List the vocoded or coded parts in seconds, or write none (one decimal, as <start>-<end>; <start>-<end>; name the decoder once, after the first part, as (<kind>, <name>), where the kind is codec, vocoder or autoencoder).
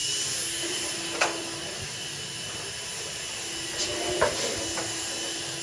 none